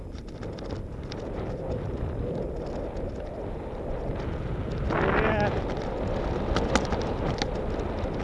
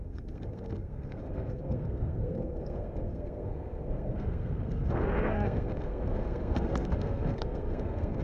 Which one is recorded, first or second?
first